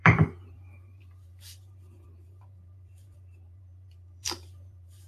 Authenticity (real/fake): fake